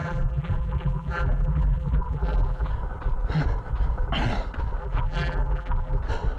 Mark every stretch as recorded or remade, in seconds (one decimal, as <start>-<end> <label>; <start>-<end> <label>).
0.0-2.7 remade; 2.7-4.8 recorded; 4.8-6.0 remade; 6.0-6.4 recorded